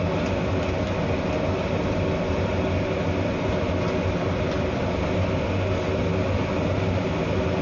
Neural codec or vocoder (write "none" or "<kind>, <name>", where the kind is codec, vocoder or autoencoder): none